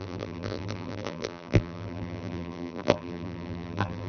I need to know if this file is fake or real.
fake